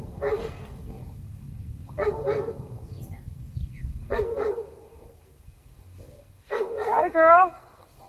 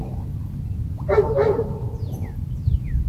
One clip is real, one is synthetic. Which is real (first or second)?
second